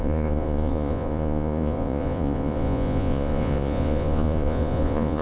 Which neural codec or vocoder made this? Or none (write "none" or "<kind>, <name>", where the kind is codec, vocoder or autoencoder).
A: vocoder, Vocos